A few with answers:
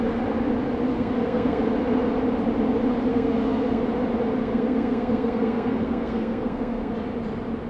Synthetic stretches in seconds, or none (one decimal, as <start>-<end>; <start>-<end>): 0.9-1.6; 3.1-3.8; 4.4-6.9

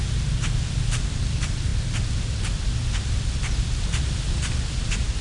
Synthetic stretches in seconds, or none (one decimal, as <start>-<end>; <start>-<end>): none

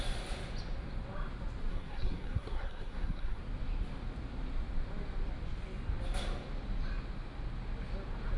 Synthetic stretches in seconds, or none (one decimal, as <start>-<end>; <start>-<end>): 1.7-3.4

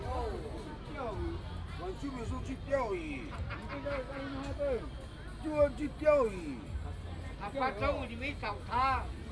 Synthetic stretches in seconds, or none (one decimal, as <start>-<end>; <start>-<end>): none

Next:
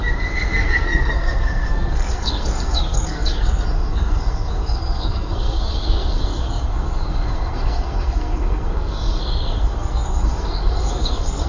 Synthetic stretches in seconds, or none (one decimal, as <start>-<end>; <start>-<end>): 0.0-11.5

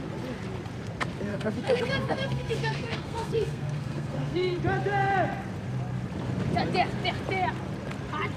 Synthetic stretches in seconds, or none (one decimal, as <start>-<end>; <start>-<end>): 1.3-4.6

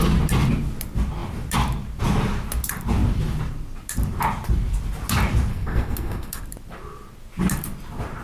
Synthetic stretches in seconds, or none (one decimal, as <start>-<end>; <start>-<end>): 5.5-6.4